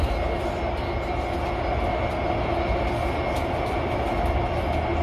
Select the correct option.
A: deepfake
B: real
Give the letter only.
B